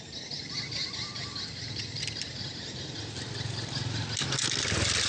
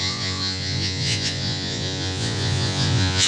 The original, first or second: first